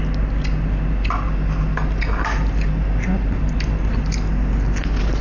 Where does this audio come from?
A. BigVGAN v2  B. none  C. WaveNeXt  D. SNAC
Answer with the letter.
B